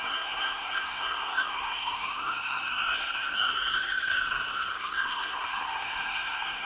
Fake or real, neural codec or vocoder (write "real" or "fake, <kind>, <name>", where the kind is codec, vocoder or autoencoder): fake, codec, SNAC